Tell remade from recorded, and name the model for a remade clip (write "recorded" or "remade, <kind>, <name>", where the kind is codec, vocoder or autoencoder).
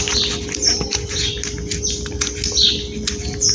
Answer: recorded